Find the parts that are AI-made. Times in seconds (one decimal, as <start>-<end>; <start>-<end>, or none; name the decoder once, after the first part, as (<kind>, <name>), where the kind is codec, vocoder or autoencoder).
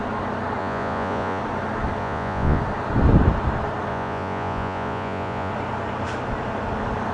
0.6-1.4 (vocoder, Vocos); 2.0-2.6; 3.9-5.5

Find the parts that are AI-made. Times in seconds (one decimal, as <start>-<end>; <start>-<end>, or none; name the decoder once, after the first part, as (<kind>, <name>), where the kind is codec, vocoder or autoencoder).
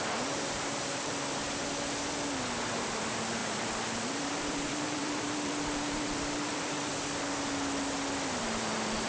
0.0-1.4 (vocoder, BigVGAN v2); 2.7-6.9; 8.4-9.1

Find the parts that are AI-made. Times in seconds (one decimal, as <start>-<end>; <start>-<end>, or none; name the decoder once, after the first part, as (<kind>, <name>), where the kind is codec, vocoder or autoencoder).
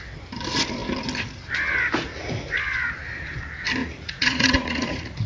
3.8-5.3 (vocoder, Vocos)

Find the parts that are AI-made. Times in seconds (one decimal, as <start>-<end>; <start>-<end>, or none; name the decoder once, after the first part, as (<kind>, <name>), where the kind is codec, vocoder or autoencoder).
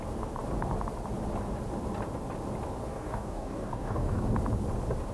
2.9-4.2 (codec, DAC)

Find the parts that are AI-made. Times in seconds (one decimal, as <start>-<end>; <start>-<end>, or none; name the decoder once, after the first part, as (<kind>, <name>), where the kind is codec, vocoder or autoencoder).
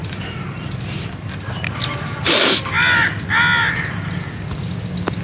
none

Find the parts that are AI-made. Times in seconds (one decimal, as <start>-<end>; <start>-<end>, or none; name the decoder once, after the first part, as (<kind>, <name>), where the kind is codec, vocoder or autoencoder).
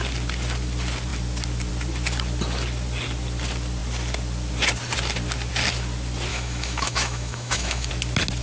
6.3-7.9 (autoencoder, DAC-VAE)